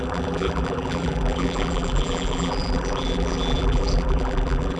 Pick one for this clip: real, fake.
fake